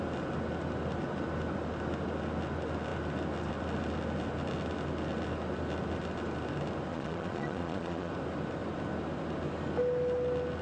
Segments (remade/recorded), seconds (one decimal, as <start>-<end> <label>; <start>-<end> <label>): 0.0-6.9 recorded; 6.9-8.1 remade; 8.1-10.6 recorded